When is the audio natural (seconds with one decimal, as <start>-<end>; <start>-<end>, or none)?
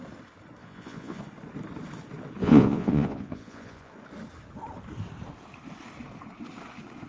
0.0-0.6; 1.2-2.4; 3.9-7.1